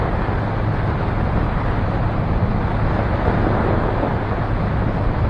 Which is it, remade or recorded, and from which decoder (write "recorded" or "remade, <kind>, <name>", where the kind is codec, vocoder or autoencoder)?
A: recorded